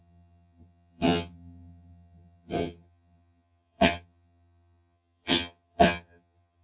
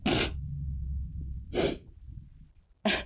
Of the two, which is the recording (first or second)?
second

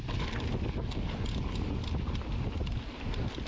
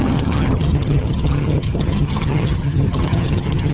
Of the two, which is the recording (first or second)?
first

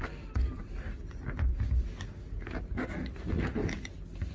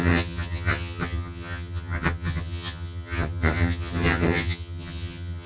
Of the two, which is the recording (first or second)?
first